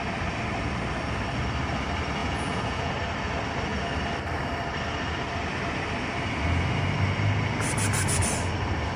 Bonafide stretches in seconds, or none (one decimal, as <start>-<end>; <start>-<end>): 0.0-2.2; 2.9-9.0